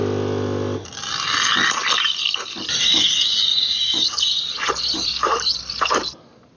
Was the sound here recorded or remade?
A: recorded